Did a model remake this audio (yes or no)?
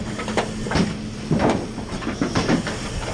no